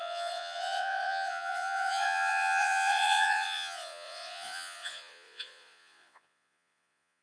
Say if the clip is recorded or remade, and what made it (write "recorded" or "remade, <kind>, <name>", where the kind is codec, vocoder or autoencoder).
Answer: remade, vocoder, Vocos